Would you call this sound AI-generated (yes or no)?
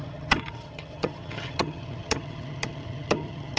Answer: yes